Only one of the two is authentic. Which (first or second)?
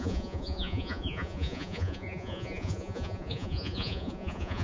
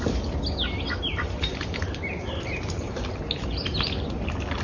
second